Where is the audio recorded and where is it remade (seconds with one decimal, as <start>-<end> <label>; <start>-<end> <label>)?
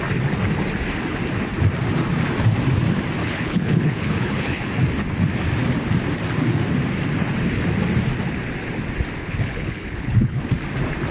0.0-3.2 recorded; 3.2-4.7 remade; 4.7-9.2 recorded; 9.2-10.4 remade; 10.4-11.1 recorded